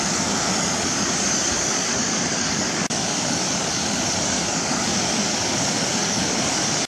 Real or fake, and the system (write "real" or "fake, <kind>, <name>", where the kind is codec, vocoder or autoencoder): fake, codec, DAC